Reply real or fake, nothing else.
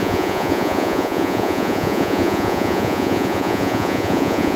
fake